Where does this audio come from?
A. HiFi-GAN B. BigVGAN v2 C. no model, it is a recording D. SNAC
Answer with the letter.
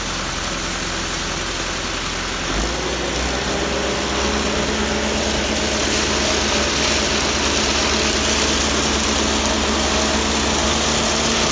C